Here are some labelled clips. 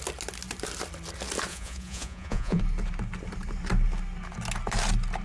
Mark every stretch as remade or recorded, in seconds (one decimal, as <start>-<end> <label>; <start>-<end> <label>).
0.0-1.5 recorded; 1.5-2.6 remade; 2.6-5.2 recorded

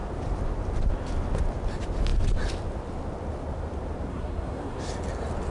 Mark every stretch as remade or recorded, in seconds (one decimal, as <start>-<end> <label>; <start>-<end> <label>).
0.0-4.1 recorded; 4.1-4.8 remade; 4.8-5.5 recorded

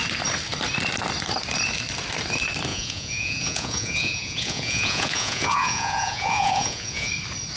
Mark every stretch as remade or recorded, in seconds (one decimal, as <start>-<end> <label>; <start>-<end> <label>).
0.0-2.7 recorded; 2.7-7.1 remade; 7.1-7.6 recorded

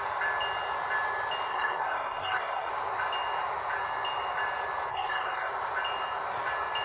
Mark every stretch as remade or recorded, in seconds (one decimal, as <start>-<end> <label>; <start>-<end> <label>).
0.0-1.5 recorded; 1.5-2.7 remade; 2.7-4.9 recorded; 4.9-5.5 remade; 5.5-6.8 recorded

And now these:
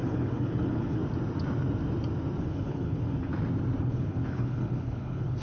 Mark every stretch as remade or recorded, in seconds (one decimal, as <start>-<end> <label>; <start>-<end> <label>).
0.0-1.0 remade; 1.0-2.4 recorded; 2.4-3.3 remade; 3.3-3.8 recorded; 3.8-5.4 remade

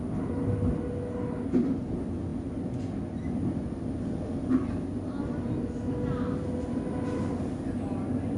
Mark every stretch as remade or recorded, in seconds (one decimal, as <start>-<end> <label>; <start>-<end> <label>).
0.0-8.4 recorded

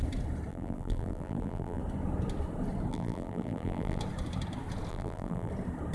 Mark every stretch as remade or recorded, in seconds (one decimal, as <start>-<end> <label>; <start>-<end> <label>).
0.0-0.5 recorded; 0.5-1.8 remade; 1.8-2.9 recorded; 2.9-4.0 remade; 4.0-4.9 recorded; 4.9-5.5 remade; 5.5-5.9 recorded

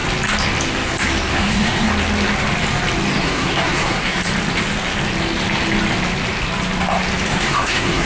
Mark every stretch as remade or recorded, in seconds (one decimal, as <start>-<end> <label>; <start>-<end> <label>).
0.0-1.3 recorded; 1.3-1.9 remade; 1.9-3.2 recorded; 3.2-4.2 remade; 4.2-7.3 recorded; 7.3-8.1 remade